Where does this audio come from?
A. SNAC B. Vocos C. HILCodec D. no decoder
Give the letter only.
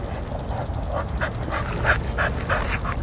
D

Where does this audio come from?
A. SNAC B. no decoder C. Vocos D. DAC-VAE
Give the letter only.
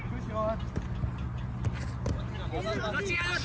B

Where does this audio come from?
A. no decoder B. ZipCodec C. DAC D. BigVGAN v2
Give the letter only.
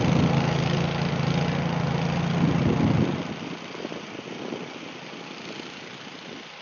A